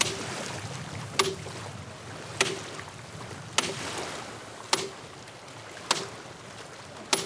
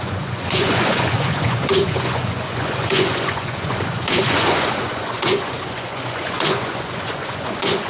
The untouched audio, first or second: first